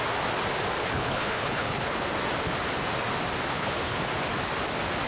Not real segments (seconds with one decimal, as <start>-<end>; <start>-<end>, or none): 0.8-2.1; 3.5-4.0